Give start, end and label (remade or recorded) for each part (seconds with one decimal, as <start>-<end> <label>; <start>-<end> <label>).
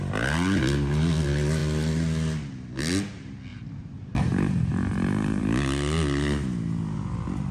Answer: 0.0-3.5 recorded; 3.5-5.4 remade; 5.4-7.5 recorded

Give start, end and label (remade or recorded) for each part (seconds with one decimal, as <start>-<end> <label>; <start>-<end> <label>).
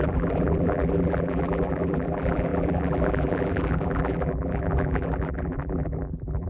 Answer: 0.0-6.5 remade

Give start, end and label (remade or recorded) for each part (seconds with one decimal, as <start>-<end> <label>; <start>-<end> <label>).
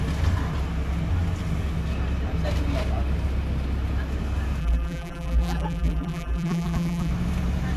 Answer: 0.0-4.6 recorded; 4.6-7.1 remade; 7.1-7.8 recorded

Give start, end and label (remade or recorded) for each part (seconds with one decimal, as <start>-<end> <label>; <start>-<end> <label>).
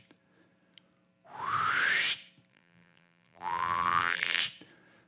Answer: 0.0-2.5 recorded; 2.5-4.4 remade; 4.4-5.1 recorded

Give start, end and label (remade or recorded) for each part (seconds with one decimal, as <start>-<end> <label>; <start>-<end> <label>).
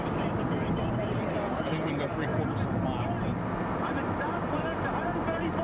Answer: 0.0-2.3 remade; 2.3-3.9 recorded; 3.9-4.7 remade; 4.7-5.6 recorded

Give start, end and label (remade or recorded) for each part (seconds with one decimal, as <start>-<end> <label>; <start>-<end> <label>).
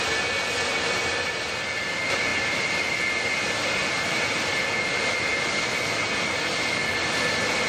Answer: 0.0-7.7 recorded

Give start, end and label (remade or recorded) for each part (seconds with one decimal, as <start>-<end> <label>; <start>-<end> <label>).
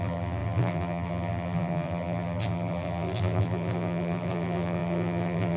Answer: 0.0-5.6 remade